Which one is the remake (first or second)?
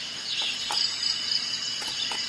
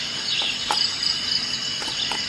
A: second